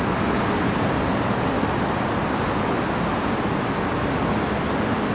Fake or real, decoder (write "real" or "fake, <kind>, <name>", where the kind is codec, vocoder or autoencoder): real